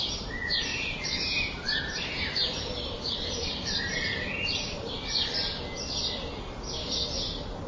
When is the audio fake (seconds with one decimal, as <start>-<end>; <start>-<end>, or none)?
0.7-4.9